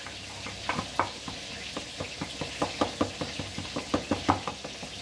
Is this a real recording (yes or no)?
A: yes